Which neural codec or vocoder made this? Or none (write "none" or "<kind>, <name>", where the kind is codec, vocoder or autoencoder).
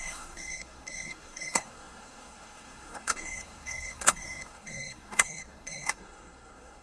codec, SNAC